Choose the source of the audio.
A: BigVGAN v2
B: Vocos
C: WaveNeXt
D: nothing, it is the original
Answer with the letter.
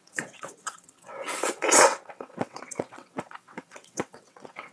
C